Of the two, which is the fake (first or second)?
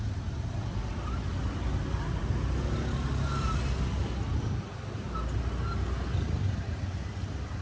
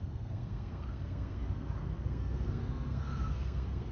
second